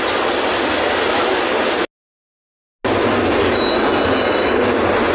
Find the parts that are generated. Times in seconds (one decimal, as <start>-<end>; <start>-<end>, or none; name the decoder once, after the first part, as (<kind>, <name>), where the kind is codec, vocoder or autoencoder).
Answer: none